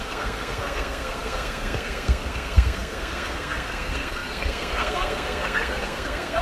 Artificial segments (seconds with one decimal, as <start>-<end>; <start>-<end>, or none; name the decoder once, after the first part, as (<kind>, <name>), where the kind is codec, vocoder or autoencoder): 0.0-6.4 (codec, SNAC)